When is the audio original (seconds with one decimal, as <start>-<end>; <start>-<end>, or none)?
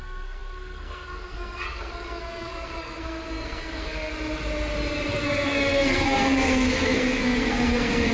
4.1-5.1